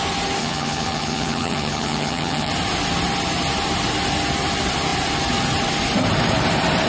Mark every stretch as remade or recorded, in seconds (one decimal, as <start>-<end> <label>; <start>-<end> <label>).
0.0-0.4 recorded; 0.4-2.5 remade; 2.5-6.9 recorded